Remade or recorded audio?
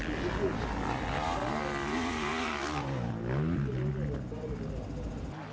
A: recorded